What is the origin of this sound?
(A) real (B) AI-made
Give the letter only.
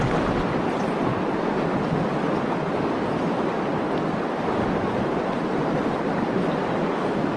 A